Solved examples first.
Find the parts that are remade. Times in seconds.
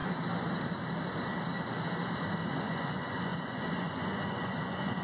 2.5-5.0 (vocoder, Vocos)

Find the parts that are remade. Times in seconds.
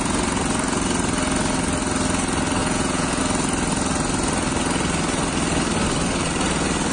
2.6-3.2 (vocoder, Vocos)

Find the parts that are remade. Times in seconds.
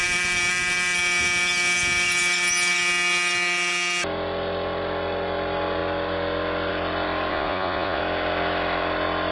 7.3-8.0 (vocoder, Vocos)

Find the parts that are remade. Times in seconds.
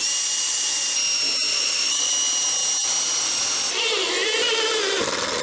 1.5-2.1 (vocoder, Vocos)